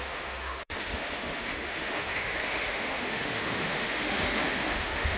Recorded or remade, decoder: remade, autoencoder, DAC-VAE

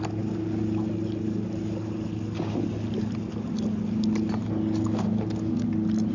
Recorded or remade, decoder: recorded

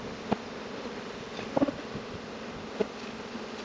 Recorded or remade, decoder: recorded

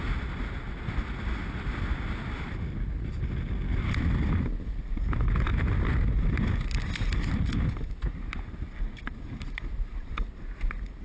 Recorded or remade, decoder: recorded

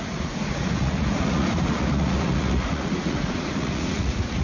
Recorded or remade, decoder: remade, vocoder, Vocos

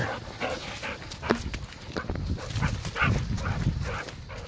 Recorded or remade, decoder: recorded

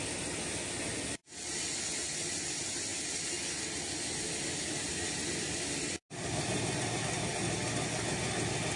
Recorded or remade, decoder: recorded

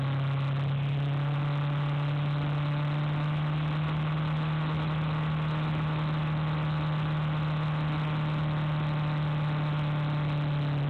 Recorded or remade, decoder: recorded